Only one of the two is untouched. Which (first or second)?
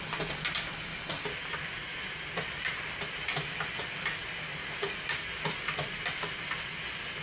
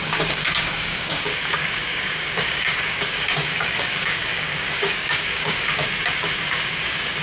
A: first